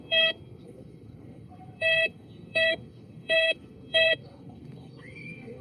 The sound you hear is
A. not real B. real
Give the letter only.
A